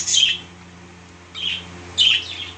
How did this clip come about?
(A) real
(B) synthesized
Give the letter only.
A